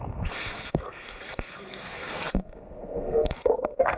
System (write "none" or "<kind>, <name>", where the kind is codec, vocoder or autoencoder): codec, SNAC